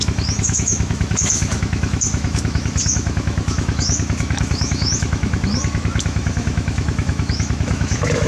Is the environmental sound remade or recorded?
remade